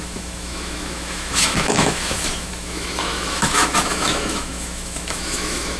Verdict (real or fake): fake